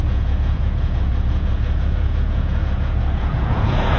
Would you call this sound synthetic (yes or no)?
yes